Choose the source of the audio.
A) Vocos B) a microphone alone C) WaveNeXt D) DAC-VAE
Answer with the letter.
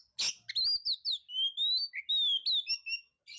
B